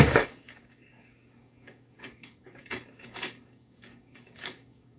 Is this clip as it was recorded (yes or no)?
no